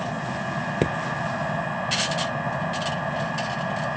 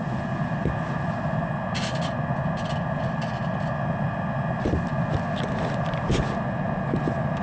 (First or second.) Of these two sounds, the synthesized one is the second